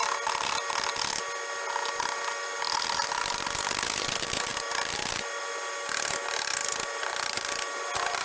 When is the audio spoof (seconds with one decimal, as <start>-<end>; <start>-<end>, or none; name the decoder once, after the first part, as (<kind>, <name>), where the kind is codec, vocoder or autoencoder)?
none